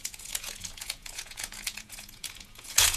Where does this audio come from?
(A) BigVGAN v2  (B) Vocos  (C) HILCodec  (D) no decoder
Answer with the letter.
B